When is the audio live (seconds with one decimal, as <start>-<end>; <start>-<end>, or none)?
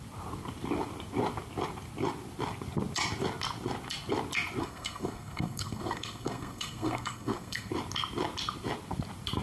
0.0-4.6; 7.7-9.4